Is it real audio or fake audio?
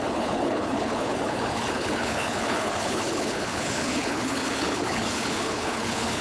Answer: fake